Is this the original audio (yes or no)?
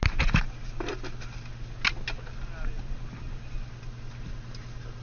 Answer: yes